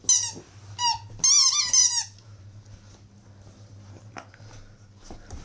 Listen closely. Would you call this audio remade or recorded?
recorded